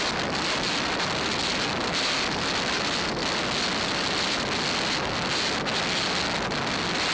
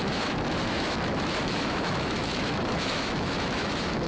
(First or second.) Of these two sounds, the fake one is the second